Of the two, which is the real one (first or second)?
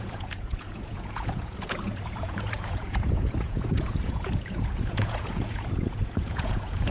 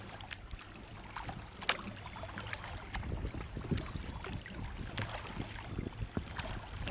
second